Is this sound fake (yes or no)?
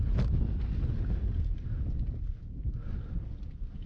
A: no